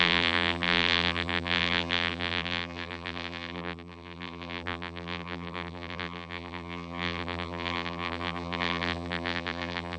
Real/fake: fake